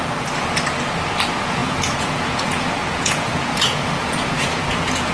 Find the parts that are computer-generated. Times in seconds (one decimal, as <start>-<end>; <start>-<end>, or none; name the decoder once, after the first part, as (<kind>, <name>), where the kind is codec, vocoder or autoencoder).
1.6-5.1 (vocoder, Vocos)